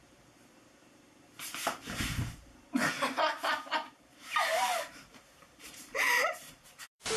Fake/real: fake